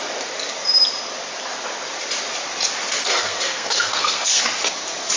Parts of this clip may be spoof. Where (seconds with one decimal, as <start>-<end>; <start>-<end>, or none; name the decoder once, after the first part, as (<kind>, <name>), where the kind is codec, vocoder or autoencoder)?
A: 3.0-4.4 (codec, SNAC)

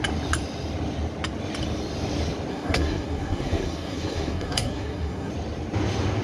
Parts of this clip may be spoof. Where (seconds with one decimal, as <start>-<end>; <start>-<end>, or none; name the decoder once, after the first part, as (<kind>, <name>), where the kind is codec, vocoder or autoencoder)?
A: 2.5-5.3 (codec, SNAC)